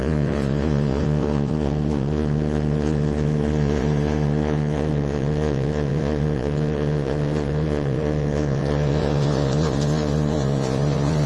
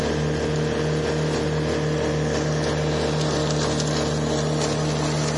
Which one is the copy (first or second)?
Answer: first